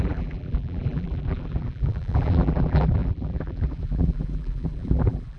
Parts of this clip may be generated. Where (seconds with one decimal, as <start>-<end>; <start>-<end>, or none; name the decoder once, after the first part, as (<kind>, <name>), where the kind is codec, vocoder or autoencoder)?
0.0-5.4 (vocoder, BigVGAN v2)